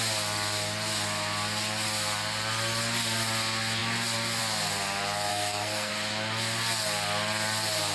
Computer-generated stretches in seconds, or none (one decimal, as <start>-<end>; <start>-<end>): 5.3-5.9